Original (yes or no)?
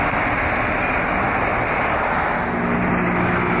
yes